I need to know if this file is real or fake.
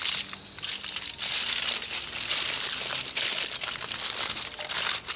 real